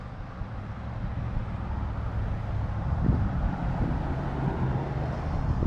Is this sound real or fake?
real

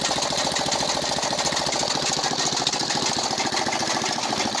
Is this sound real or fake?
real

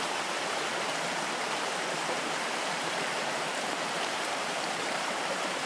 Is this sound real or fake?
fake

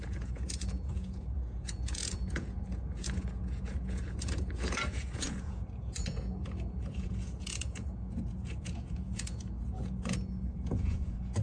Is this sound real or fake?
fake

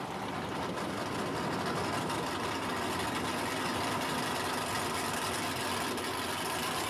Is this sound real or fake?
real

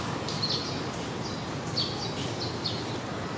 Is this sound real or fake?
real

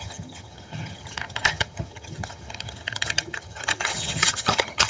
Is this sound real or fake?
fake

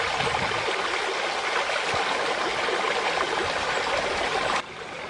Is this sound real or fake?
real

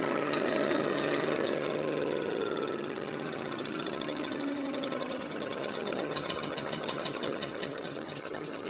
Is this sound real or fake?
fake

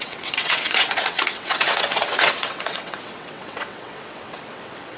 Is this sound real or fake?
fake